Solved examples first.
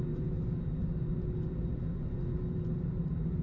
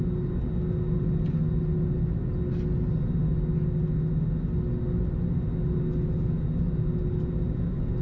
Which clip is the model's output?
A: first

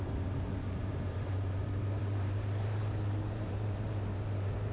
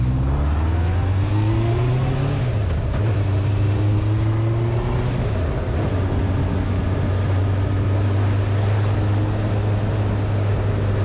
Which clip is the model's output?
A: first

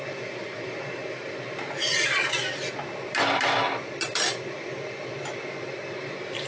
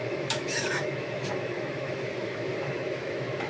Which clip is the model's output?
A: second